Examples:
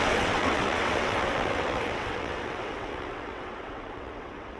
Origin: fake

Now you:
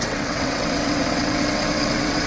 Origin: fake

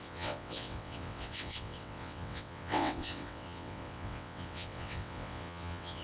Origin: fake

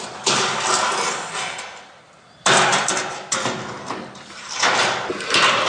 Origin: real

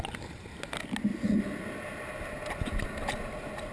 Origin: real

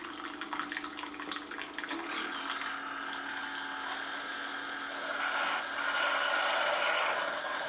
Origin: real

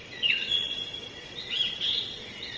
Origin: fake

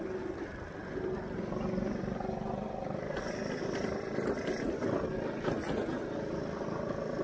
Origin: real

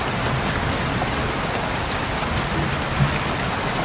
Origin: real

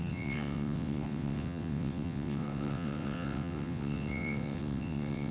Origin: fake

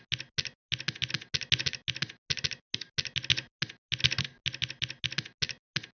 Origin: real